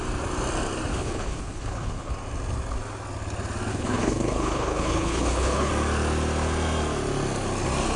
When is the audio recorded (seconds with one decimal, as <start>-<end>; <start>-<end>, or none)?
0.0-0.9; 2.1-3.7; 5.7-8.0